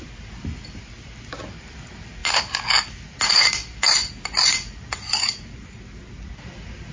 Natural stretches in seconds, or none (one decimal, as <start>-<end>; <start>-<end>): 0.0-6.9